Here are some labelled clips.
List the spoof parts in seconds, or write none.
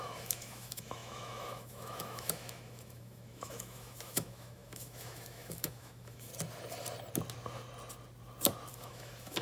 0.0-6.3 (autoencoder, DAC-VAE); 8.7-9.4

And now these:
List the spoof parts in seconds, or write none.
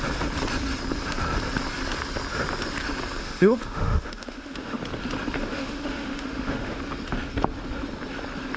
3.2-4.8 (autoencoder, DAC-VAE); 5.5-6.8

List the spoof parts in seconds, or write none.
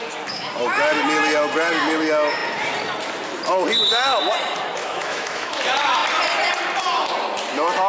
4.8-5.6 (autoencoder, DAC-VAE)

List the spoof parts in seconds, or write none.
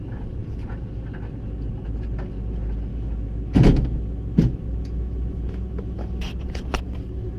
2.9-6.2 (autoencoder, DAC-VAE)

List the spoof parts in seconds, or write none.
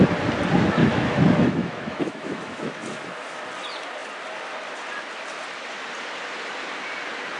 0.8-3.4 (autoencoder, DAC-VAE)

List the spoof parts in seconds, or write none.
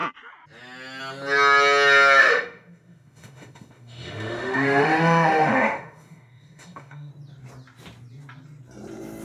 2.2-7.1 (autoencoder, DAC-VAE)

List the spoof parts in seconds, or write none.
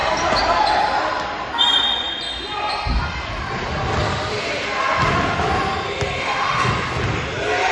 6.2-6.7 (autoencoder, DAC-VAE)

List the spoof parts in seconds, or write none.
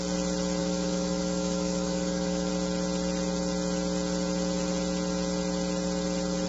0.6-2.5 (autoencoder, DAC-VAE)